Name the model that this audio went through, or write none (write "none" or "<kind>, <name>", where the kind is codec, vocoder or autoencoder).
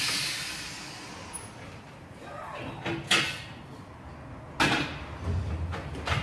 none